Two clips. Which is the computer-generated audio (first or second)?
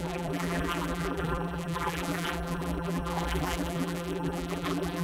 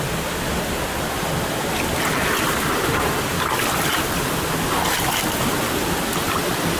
first